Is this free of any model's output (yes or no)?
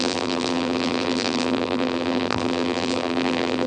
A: no